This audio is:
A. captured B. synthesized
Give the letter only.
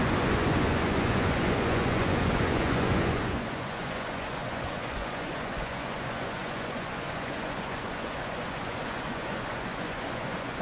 B